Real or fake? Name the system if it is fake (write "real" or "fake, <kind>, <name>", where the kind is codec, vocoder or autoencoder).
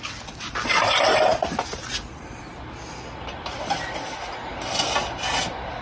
real